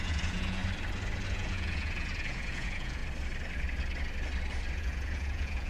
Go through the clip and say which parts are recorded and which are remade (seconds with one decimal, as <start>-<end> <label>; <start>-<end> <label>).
0.0-0.6 remade; 0.6-1.3 recorded; 1.3-3.0 remade; 3.0-4.8 recorded; 4.8-5.7 remade